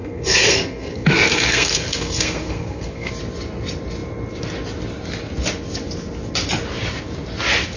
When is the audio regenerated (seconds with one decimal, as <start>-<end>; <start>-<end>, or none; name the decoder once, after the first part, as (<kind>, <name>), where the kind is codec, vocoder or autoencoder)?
0.0-3.1 (codec, SNAC)

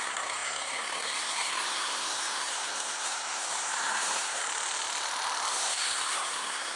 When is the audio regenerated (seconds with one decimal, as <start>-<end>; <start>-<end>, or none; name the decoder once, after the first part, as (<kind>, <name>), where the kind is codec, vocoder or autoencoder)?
0.0-4.4 (codec, SNAC); 5.5-6.8

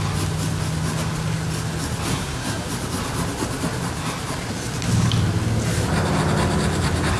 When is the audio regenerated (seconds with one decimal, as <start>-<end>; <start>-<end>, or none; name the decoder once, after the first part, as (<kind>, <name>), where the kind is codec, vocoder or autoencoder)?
2.1-2.7 (codec, SNAC)

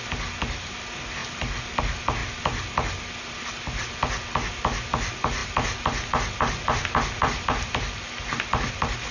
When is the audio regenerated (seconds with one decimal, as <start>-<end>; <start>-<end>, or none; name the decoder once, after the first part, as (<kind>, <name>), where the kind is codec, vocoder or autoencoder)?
none

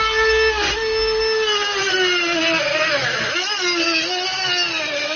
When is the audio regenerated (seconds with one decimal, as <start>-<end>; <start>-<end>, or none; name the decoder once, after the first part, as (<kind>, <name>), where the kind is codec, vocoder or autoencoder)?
none

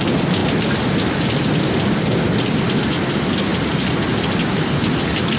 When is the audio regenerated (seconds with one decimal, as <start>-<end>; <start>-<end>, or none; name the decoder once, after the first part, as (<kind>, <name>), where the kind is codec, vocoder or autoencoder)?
none

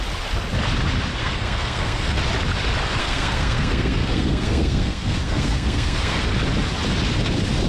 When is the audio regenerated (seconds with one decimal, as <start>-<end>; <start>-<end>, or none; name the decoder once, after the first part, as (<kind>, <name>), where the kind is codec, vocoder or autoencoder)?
1.2-2.2 (codec, SNAC); 3.0-6.2